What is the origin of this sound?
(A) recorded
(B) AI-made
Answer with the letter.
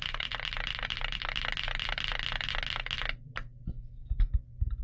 A